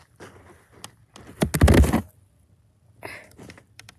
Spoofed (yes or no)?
no